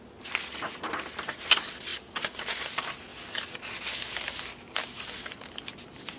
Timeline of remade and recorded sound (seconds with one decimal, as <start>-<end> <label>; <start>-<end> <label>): 0.0-6.2 recorded